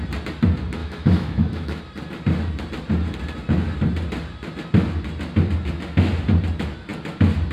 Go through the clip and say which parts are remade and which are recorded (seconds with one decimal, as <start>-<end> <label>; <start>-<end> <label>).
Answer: 0.0-0.8 recorded; 0.8-1.8 remade; 1.8-7.5 recorded